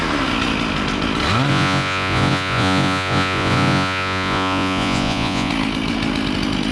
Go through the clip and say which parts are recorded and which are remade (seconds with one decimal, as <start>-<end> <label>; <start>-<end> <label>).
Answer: 0.0-1.5 recorded; 1.5-5.5 remade; 5.5-6.7 recorded